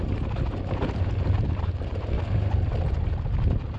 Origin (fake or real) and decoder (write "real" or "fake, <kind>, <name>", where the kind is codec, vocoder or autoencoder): real